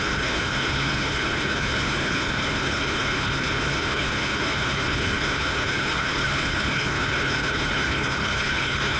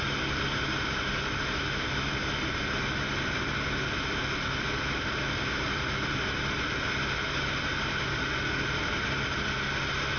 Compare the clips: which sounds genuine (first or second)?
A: second